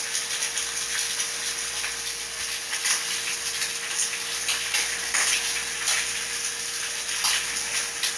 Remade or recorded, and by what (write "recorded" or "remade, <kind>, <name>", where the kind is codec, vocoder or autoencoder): recorded